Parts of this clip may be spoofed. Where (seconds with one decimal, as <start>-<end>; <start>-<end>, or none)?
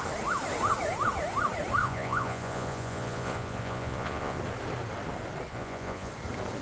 1.8-4.4; 5.5-6.1